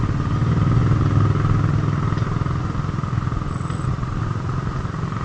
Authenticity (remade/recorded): recorded